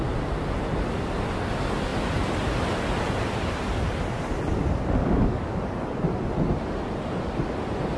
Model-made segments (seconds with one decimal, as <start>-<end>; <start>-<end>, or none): 5.0-5.6